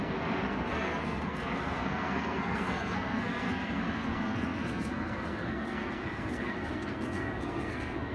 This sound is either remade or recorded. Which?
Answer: remade